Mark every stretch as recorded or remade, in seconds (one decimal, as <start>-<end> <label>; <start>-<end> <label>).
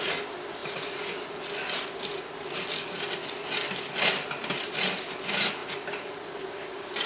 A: 0.0-7.1 recorded